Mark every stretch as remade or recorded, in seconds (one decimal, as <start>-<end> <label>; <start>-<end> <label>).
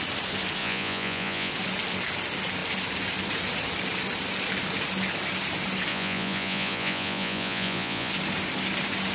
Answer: 0.0-0.6 recorded; 0.6-1.5 remade; 1.5-5.9 recorded; 5.9-8.1 remade; 8.1-9.1 recorded